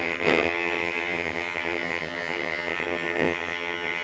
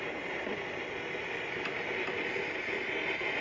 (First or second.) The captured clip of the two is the second